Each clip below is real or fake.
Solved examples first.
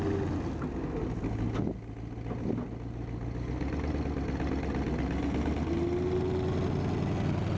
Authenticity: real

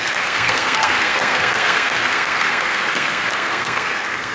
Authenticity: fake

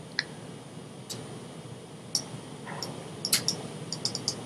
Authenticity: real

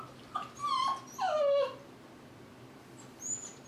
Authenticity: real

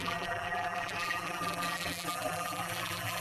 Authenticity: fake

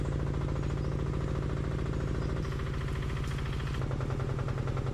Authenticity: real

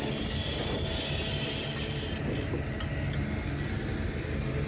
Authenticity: real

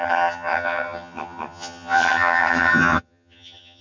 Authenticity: fake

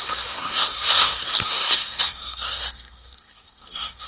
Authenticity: fake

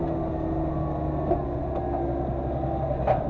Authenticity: real